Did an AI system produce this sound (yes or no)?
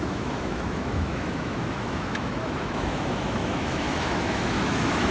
yes